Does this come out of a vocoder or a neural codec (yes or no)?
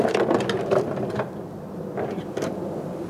no